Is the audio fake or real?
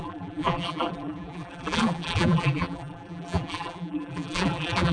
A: fake